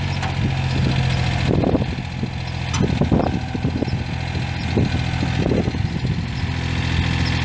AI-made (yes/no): no